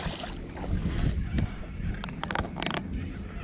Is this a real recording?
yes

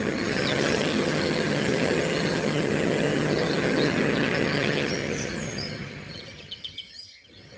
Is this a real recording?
no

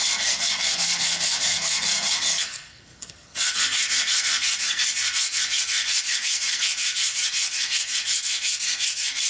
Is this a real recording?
no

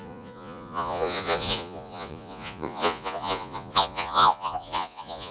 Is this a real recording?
no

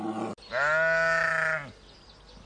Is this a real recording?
yes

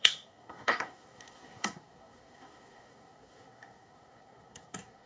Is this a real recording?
no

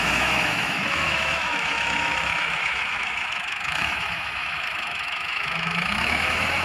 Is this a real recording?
no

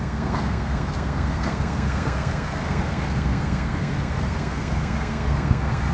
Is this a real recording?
no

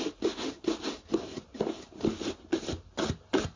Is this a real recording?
yes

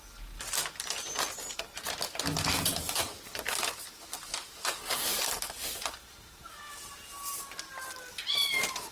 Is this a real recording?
yes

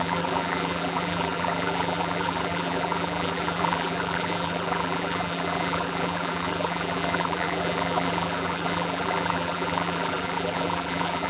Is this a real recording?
no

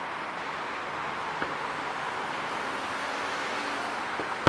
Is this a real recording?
yes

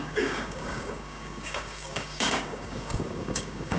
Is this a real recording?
no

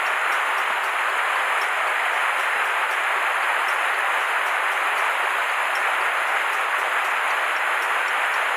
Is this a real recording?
yes